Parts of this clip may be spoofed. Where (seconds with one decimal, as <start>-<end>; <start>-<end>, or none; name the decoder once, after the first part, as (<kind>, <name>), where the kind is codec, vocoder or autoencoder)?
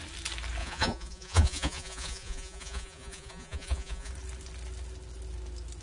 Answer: 0.6-4.1 (vocoder, Vocos)